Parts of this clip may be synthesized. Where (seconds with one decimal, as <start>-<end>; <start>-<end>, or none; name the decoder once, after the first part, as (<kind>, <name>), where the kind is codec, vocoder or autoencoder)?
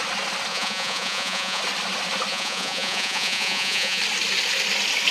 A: 0.5-1.6 (vocoder, Vocos); 2.3-4.0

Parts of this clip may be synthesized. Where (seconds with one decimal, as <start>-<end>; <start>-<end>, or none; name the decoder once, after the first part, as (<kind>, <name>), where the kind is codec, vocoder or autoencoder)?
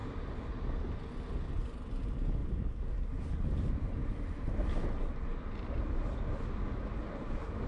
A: none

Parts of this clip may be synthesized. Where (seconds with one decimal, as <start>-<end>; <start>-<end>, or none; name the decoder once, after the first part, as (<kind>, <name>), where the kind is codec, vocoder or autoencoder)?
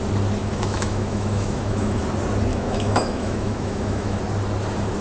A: 0.4-2.0 (autoencoder, DAC-VAE); 2.5-4.2